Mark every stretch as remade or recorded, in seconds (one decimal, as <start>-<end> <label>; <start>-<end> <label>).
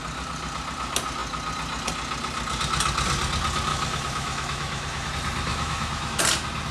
0.0-3.7 recorded; 3.7-5.1 remade; 5.1-5.5 recorded; 5.5-6.2 remade; 6.2-6.7 recorded